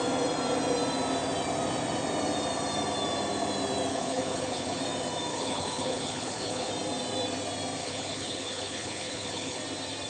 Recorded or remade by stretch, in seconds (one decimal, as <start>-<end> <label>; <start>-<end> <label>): 0.0-3.9 recorded; 3.9-4.8 remade; 4.8-5.3 recorded; 5.3-6.7 remade; 6.7-7.8 recorded; 7.8-9.6 remade; 9.6-10.1 recorded